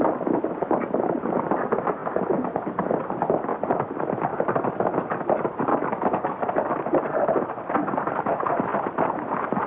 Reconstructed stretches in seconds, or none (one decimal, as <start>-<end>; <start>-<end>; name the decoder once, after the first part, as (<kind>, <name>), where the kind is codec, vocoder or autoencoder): 5.7-6.7 (codec, DAC)

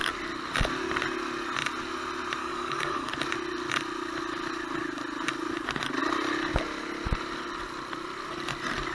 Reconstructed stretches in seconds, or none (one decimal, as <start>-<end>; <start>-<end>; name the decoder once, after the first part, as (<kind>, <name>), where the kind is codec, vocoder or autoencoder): 2.4-3.1 (codec, DAC)

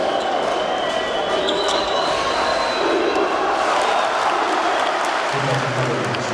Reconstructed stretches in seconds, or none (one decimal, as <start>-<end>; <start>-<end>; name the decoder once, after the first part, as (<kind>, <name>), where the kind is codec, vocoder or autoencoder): 0.0-0.5 (codec, DAC); 1.4-2.5

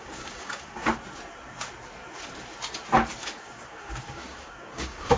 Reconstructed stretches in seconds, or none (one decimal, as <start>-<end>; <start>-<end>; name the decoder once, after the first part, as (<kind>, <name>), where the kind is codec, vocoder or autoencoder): 0.0-0.8 (codec, DAC); 3.2-5.2

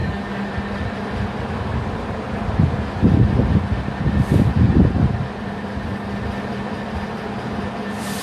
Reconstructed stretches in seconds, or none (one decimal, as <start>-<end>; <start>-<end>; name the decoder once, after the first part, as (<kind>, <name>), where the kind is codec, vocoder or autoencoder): 0.0-0.5 (codec, DAC)

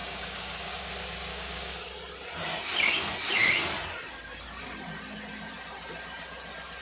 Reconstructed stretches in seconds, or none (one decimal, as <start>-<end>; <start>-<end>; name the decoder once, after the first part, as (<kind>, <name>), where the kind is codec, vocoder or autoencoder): 0.0-0.8 (codec, DAC); 1.3-1.9